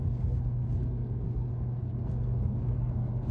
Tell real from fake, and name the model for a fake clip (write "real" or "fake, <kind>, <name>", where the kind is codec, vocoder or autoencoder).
fake, codec, SNAC